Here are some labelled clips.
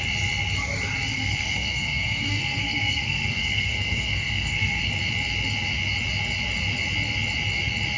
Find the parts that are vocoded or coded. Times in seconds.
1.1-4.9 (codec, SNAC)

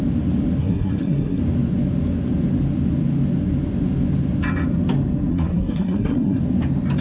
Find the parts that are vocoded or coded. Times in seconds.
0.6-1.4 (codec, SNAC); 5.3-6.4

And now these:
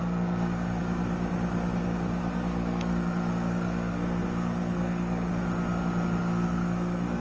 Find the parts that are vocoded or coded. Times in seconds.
0.0-0.8 (codec, SNAC); 2.2-5.3; 6.2-7.2